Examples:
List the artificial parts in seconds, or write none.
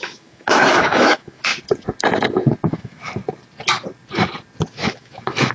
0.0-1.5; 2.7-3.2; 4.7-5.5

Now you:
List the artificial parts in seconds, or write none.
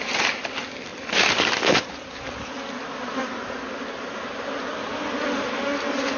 none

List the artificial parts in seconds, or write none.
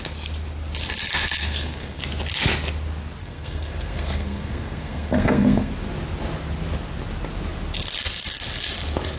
1.4-2.0; 3.2-5.7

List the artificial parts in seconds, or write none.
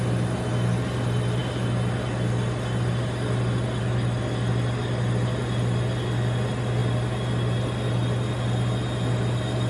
none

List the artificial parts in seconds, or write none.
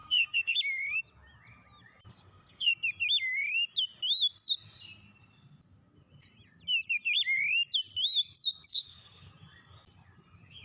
0.0-0.6; 2.1-2.7; 8.7-9.3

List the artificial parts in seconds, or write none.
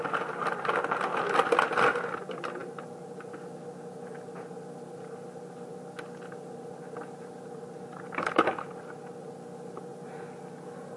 none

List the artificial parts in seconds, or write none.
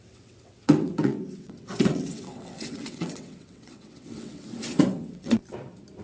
0.0-5.4